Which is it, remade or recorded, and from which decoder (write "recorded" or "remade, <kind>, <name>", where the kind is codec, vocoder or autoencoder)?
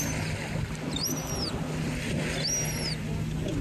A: recorded